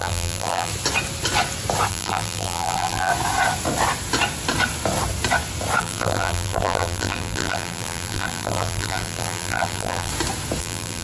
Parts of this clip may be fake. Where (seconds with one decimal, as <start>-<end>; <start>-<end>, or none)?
0.0-0.7; 1.9-3.1; 5.8-10.1; 10.6-11.0